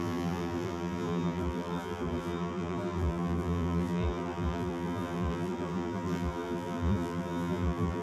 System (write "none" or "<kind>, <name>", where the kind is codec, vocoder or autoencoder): vocoder, BigVGAN v2